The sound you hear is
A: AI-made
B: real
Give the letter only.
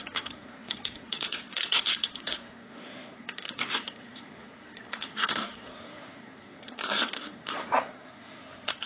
A